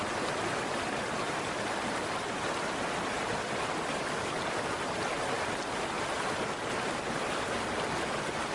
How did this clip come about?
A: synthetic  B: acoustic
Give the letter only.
B